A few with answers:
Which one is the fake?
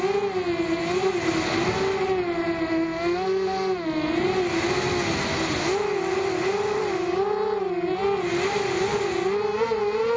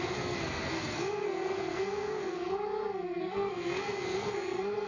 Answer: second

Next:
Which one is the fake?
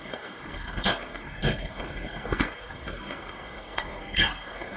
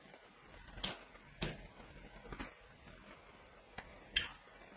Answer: first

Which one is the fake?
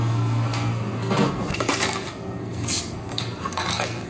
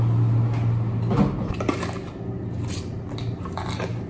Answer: first